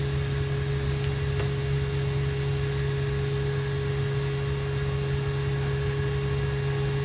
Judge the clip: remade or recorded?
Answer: recorded